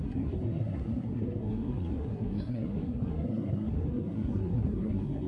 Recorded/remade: remade